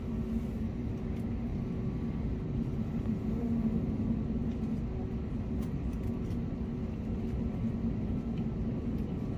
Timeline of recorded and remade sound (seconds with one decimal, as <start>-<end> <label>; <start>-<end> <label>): 0.0-9.4 recorded